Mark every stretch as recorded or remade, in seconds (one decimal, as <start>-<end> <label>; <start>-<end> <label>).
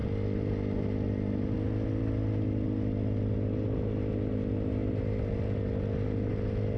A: 0.0-6.8 recorded